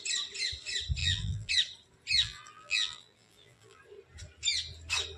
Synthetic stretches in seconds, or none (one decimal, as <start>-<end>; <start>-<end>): 1.0-1.5; 2.2-3.8